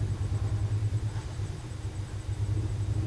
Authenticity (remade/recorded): recorded